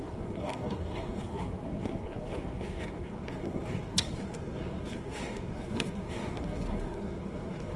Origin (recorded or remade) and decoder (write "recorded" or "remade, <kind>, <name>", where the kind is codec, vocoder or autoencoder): remade, codec, SNAC